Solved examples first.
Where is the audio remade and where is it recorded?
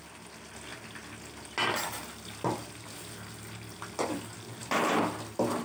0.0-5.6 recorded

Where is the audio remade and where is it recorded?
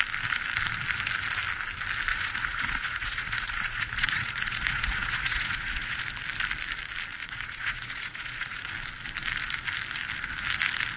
0.0-2.1 recorded; 2.1-6.0 remade; 6.0-7.2 recorded; 7.2-8.7 remade; 8.7-11.0 recorded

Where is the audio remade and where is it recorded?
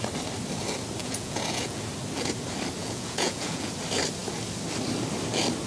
0.0-1.0 recorded; 1.0-1.8 remade; 1.8-2.8 recorded; 2.8-3.7 remade; 3.7-5.7 recorded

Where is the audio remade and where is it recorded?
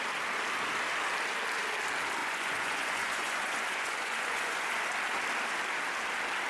0.0-2.2 recorded; 2.2-4.8 remade; 4.8-6.5 recorded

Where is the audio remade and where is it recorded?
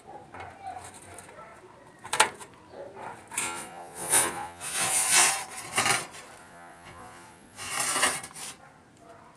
0.0-3.4 recorded; 3.4-5.3 remade; 5.3-6.4 recorded; 6.4-7.7 remade; 7.7-9.4 recorded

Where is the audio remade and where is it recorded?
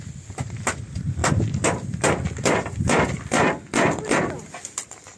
0.0-5.2 recorded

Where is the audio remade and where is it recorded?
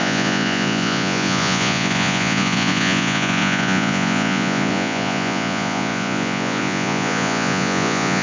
0.0-8.2 remade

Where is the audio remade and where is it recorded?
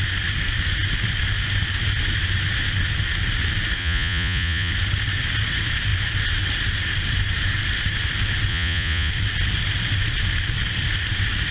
0.0-3.8 recorded; 3.8-4.7 remade; 4.7-8.5 recorded; 8.5-9.1 remade; 9.1-11.5 recorded